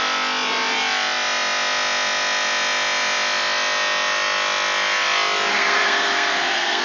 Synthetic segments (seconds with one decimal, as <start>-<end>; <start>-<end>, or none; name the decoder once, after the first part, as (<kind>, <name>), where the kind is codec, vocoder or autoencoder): 5.5-6.8 (codec, SNAC)